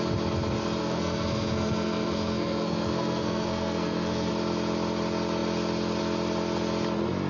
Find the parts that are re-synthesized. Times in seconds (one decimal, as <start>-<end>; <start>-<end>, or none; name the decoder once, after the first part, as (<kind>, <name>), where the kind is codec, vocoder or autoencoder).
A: 0.8-4.3 (codec, SNAC)